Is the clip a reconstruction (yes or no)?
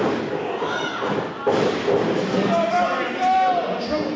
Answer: no